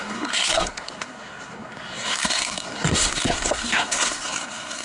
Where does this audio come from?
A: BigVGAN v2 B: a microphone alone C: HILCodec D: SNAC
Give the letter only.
D